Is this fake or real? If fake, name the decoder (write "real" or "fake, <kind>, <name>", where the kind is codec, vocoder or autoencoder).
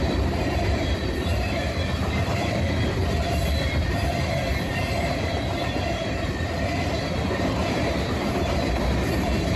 fake, vocoder, BigVGAN v2